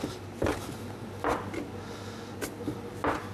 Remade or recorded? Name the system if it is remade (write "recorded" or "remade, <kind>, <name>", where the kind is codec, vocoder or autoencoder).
recorded